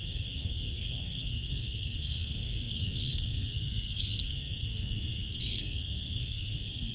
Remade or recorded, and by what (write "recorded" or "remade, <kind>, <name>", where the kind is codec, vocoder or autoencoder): remade, codec, SNAC